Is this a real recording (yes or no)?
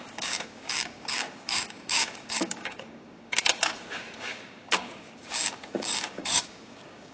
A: no